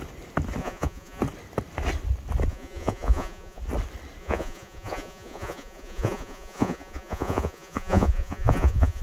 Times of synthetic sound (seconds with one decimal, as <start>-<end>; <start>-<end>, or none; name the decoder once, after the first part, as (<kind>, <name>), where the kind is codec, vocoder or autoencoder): 0.6-1.2 (vocoder, Vocos); 2.5-3.6; 4.2-9.0